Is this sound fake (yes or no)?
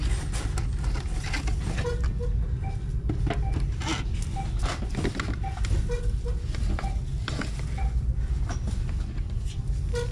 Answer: no